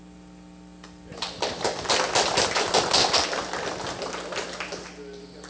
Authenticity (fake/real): real